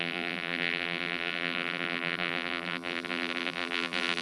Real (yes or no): no